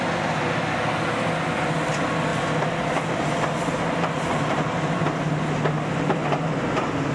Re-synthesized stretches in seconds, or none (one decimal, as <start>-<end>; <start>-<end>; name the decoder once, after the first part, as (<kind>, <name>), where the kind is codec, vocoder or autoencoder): none